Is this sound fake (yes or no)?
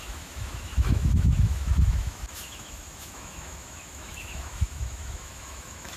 yes